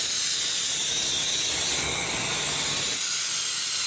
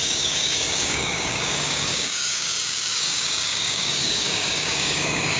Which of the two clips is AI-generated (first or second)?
second